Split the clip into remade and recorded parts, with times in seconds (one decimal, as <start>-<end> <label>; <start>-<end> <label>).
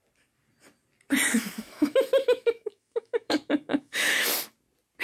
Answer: 0.0-1.3 recorded; 1.3-4.3 remade; 4.3-5.0 recorded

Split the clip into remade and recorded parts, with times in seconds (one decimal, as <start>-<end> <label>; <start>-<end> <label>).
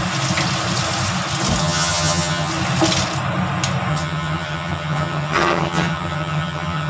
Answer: 0.0-1.6 recorded; 1.6-2.5 remade; 2.5-3.9 recorded; 3.9-6.9 remade